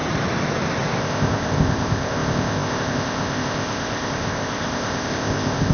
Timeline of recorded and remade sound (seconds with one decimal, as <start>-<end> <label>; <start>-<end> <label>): 0.0-1.0 recorded; 1.0-5.7 remade